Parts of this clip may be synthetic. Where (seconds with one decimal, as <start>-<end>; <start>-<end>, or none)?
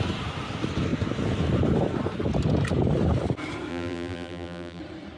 3.7-4.8